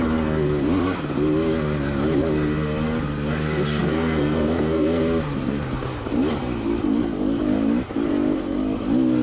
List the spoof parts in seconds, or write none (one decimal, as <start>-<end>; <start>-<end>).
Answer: 3.8-5.0